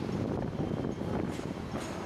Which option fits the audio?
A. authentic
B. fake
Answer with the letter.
A